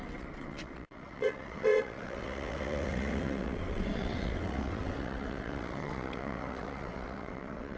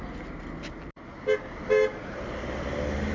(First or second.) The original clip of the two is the second